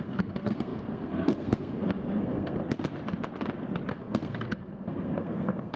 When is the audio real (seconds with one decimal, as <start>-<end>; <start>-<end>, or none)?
2.6-3.9